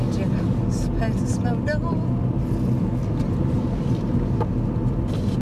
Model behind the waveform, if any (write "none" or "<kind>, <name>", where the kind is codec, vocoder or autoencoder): none